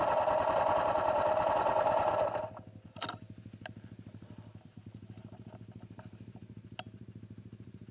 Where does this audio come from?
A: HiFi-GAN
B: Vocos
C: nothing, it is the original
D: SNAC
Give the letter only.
C